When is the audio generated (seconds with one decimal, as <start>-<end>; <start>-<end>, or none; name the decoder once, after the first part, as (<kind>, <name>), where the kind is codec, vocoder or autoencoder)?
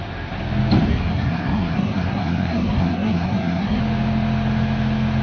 0.9-3.8 (codec, SNAC)